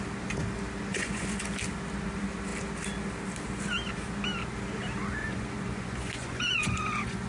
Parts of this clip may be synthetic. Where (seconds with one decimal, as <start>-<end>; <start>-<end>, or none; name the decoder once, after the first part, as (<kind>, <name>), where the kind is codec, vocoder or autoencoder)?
0.9-1.4 (vocoder, Vocos); 5.2-7.3